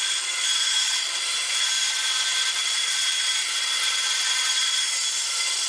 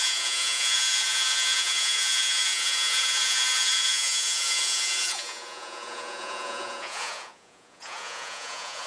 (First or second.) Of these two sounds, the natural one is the first